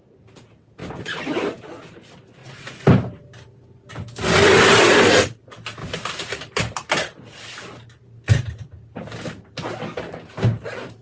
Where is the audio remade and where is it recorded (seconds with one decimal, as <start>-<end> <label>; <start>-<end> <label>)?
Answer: 0.0-0.8 recorded; 0.8-1.6 remade; 1.6-2.4 recorded; 2.4-5.0 remade; 5.0-5.8 recorded; 5.8-6.6 remade; 6.6-11.0 recorded